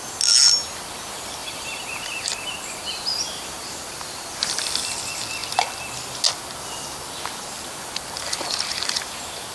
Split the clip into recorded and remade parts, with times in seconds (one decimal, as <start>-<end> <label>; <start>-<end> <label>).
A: 0.0-1.4 recorded; 1.4-4.4 remade; 4.4-9.5 recorded